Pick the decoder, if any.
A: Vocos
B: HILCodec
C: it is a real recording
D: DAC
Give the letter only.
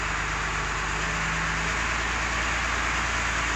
C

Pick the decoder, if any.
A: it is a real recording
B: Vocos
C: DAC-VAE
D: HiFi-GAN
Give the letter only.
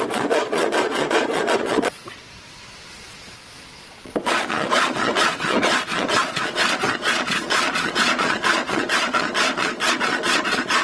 B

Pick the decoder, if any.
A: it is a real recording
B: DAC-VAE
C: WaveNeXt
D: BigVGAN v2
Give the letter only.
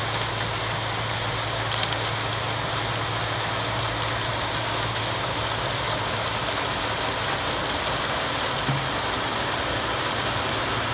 A